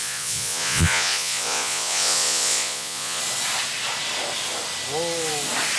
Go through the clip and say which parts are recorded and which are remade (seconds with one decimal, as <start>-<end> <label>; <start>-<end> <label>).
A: 0.0-3.2 remade; 3.2-5.8 recorded